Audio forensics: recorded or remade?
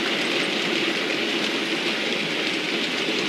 recorded